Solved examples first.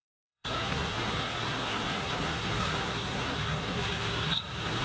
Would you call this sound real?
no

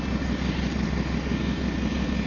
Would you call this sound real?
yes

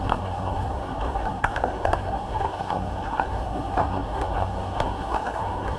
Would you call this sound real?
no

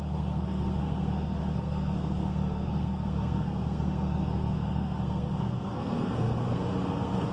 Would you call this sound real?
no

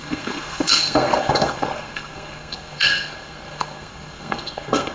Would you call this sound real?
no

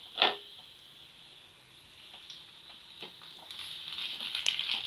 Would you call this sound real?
yes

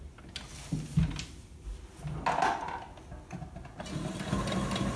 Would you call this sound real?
yes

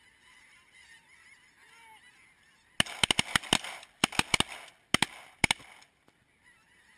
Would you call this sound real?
yes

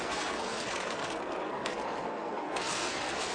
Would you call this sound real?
no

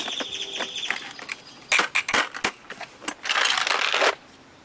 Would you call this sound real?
yes